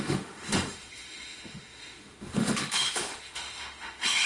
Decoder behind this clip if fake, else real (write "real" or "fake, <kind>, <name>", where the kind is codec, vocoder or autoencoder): fake, autoencoder, DAC-VAE